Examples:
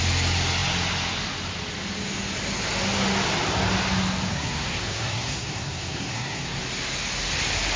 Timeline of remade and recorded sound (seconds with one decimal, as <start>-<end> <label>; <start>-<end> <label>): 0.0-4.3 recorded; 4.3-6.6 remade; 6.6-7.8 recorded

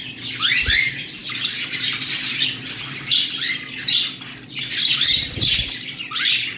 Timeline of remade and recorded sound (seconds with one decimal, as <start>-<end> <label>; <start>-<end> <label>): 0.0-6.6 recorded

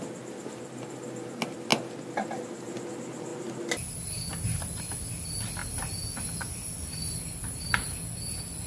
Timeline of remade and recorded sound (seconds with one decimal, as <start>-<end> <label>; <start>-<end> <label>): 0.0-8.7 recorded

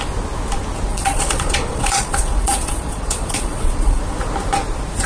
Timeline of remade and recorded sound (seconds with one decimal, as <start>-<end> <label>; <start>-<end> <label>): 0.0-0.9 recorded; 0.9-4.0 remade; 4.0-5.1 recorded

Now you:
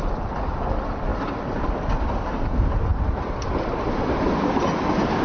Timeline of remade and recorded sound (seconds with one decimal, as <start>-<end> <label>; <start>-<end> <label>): 0.0-5.2 recorded